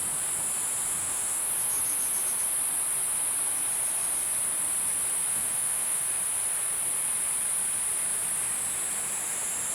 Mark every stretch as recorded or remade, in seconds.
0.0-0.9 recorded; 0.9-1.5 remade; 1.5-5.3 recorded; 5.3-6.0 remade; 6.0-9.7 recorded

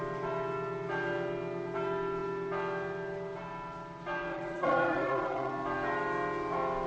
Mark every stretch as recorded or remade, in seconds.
0.0-4.3 recorded; 4.3-5.5 remade; 5.5-6.9 recorded

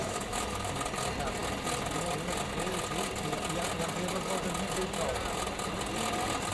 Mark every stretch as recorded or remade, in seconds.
0.0-0.7 remade; 0.7-6.5 recorded